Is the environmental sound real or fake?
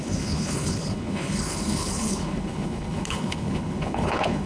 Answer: fake